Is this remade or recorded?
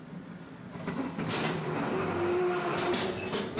recorded